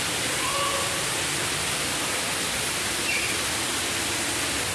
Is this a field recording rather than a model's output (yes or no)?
yes